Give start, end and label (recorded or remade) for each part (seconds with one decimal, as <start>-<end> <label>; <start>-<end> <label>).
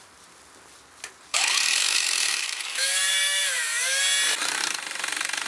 0.0-1.3 recorded; 1.3-4.0 remade; 4.0-5.5 recorded